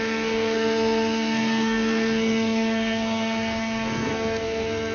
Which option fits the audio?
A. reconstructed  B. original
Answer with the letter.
A